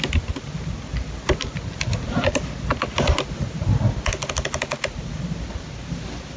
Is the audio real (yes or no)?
yes